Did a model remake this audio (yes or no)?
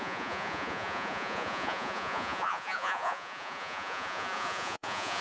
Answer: yes